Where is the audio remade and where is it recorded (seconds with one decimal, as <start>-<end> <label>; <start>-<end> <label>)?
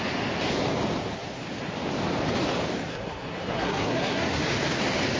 0.0-2.9 recorded; 2.9-4.4 remade; 4.4-5.2 recorded